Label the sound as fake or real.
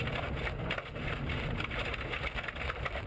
real